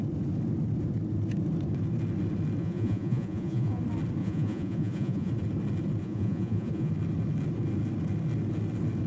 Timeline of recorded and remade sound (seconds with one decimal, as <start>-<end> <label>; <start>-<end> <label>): 0.0-2.6 recorded; 2.6-3.8 remade; 3.8-4.2 recorded; 4.2-5.3 remade; 5.3-6.0 recorded; 6.0-6.9 remade; 6.9-9.1 recorded